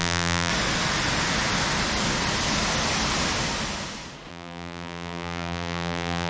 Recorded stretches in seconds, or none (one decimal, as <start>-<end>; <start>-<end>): 0.5-4.3